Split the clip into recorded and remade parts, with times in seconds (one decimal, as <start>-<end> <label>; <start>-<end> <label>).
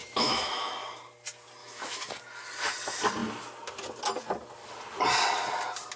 0.0-0.7 remade; 0.7-1.6 recorded; 1.6-2.1 remade; 2.1-6.0 recorded